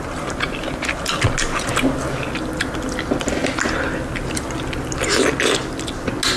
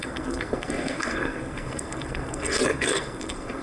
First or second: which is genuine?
first